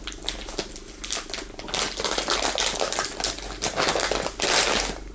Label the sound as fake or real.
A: real